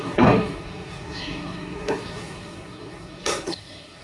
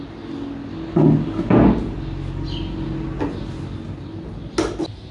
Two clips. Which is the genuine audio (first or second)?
second